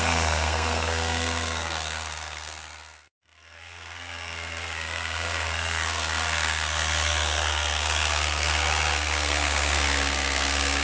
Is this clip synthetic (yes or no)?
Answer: yes